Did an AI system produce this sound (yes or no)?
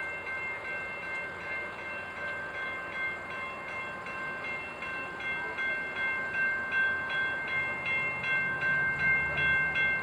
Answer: no